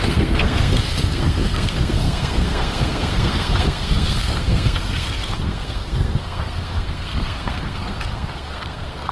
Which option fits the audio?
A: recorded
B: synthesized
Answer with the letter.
B